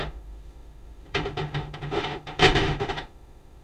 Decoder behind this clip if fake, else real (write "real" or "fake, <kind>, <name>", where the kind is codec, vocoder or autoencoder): fake, autoencoder, DAC-VAE